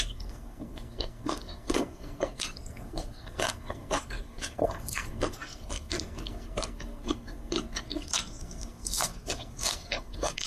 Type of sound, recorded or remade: remade